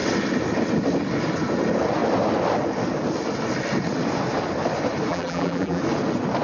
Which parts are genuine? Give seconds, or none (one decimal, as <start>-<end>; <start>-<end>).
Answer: 0.0-5.1; 5.8-6.4